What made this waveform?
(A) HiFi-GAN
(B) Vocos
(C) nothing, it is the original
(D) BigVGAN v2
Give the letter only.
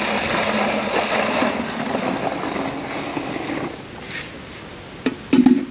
C